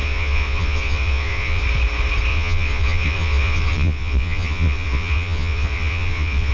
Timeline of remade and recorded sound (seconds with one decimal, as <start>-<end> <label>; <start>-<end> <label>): 0.0-1.6 remade; 1.6-2.3 recorded; 2.3-6.5 remade